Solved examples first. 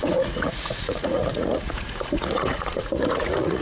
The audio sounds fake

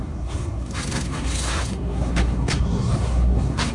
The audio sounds fake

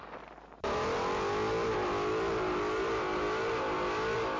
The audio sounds real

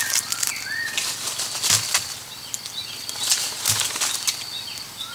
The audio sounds real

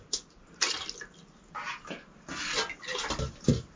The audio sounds real